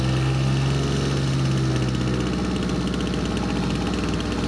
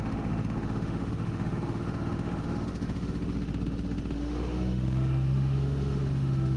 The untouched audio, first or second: first